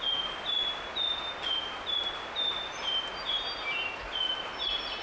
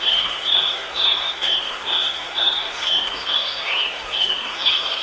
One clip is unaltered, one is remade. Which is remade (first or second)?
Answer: second